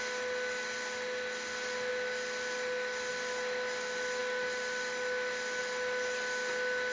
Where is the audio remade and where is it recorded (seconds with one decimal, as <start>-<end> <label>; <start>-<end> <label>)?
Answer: 0.0-6.9 recorded